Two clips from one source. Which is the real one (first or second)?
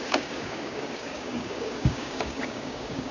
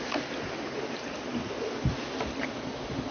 second